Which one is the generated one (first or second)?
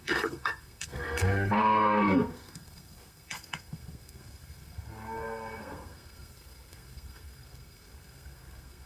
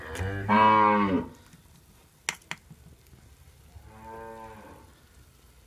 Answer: first